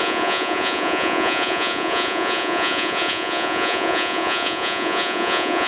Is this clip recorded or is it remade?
remade